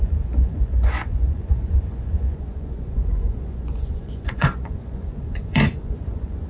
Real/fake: fake